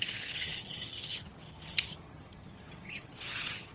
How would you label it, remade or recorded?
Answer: remade